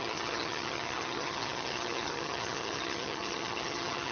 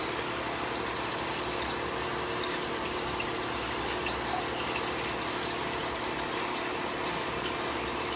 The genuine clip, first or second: second